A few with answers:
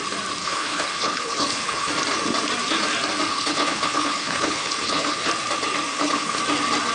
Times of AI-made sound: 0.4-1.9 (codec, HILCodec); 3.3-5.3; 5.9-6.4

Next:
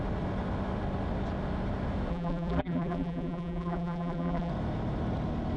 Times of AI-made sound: 2.1-4.5 (vocoder, BigVGAN v2)

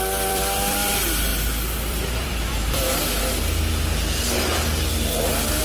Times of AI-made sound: 0.0-1.3 (vocoder, BigVGAN v2); 1.9-3.0

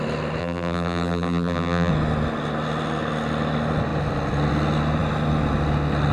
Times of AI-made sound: 0.4-1.9 (vocoder, BigVGAN v2)

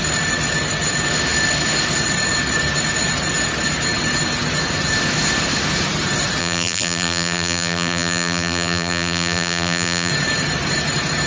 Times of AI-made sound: 6.4-10.1 (vocoder, BigVGAN v2)

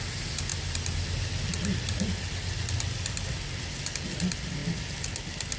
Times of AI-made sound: none

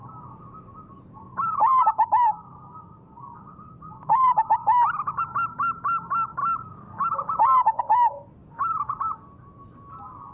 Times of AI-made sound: none